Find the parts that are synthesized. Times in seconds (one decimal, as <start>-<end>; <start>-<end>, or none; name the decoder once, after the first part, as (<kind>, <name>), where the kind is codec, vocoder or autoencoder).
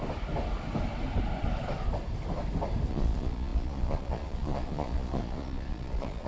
2.9-6.3 (vocoder, Vocos)